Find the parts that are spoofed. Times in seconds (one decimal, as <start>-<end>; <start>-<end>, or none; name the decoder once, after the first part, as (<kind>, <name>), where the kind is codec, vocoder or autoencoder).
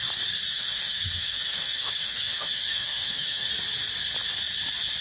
0.5-3.5 (autoencoder, DAC-VAE)